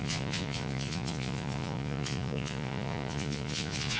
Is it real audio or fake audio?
fake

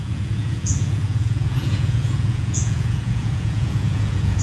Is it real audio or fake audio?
fake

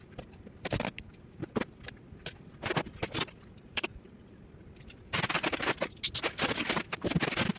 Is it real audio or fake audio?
real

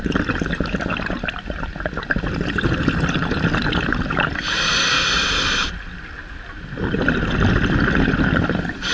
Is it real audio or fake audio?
real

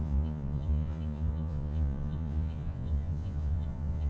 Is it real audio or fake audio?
fake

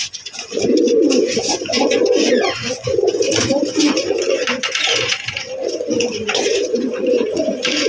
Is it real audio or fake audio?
fake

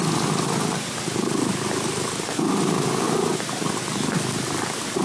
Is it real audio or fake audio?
real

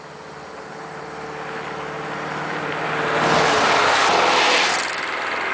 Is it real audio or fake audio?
real